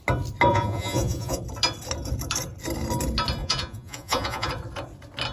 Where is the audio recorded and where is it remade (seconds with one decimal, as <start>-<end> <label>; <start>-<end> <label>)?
0.0-0.5 recorded; 0.5-1.4 remade; 1.4-3.4 recorded; 3.4-4.5 remade; 4.5-5.3 recorded